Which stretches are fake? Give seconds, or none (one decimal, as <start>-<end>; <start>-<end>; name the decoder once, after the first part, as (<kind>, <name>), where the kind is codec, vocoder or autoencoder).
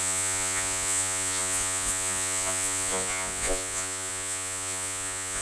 0.0-5.4 (vocoder, Vocos)